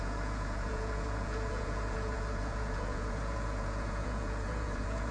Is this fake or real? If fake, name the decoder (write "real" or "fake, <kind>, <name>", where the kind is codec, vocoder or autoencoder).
fake, vocoder, Vocos